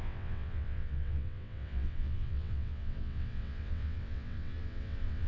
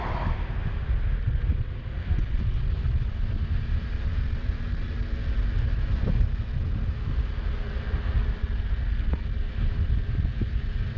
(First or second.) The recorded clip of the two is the second